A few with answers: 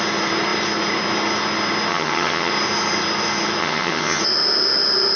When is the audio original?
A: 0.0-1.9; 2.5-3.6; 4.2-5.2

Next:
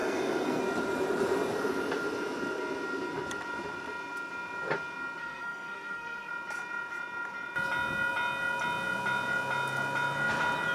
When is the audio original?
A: 0.6-5.2; 6.3-10.7

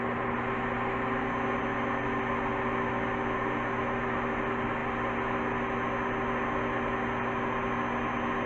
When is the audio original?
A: 0.0-8.5

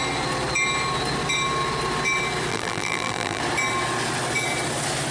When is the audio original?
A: 0.0-2.5; 3.4-5.1

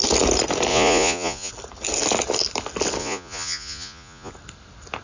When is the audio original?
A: 0.0-0.7; 1.5-3.0; 4.3-5.0

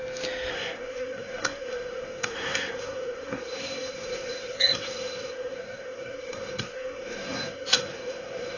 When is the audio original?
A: 0.0-0.5

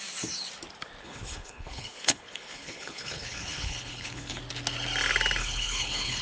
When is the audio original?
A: 0.0-1.0; 4.4-5.4